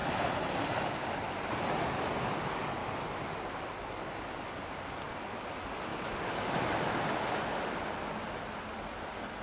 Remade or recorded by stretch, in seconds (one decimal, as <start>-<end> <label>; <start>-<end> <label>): 0.0-0.9 remade; 0.9-5.9 recorded; 5.9-6.6 remade; 6.6-9.4 recorded